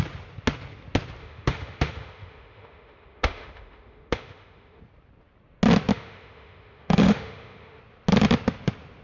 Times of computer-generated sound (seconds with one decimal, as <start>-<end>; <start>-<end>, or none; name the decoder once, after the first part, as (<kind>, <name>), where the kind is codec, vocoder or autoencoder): 1.2-4.8 (autoencoder, DAC-VAE); 5.9-7.8